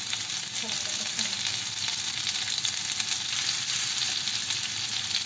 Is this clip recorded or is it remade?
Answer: recorded